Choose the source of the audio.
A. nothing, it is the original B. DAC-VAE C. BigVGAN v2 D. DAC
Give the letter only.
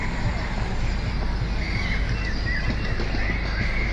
A